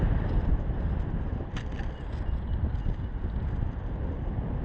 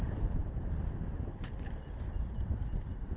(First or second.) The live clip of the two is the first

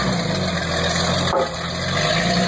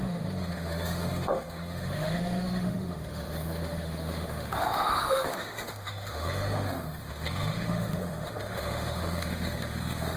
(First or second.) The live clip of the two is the first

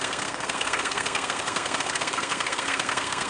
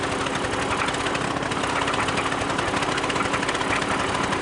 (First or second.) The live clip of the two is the second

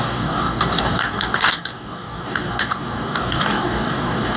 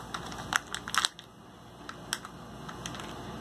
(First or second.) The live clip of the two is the second